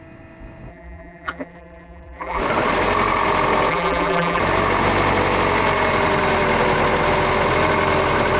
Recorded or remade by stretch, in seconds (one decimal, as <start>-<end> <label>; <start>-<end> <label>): 0.0-0.7 recorded; 0.7-2.4 remade; 2.4-3.7 recorded; 3.7-4.4 remade; 4.4-8.4 recorded

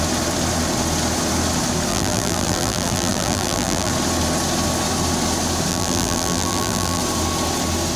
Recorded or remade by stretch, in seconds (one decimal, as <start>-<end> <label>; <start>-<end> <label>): 0.0-1.9 recorded; 1.9-3.9 remade; 3.9-5.7 recorded; 5.7-7.0 remade; 7.0-8.0 recorded